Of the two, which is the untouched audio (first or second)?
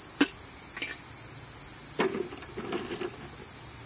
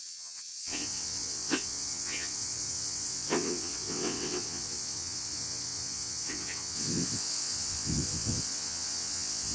first